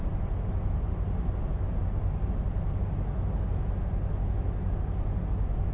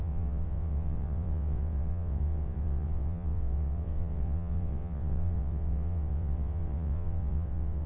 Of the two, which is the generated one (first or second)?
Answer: second